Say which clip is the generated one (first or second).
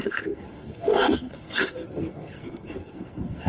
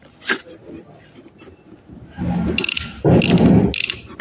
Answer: first